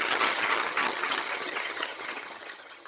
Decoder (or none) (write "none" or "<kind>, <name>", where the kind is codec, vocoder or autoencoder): vocoder, HiFi-GAN